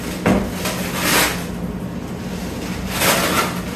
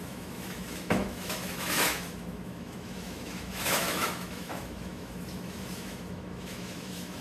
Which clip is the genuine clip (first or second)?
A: first